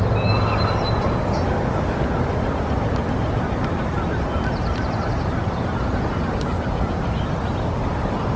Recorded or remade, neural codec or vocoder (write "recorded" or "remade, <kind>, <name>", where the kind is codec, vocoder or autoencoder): recorded